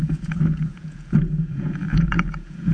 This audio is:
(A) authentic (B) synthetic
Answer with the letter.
B